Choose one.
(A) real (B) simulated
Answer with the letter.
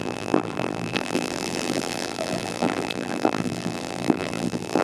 B